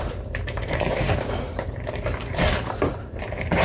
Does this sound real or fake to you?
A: fake